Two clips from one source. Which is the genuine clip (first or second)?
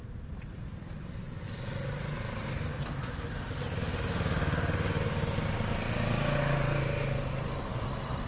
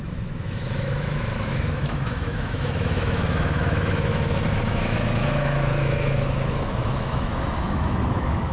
first